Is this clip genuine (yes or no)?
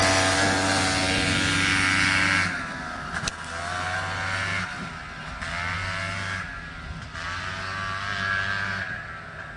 yes